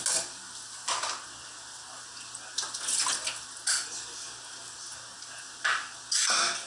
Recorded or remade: recorded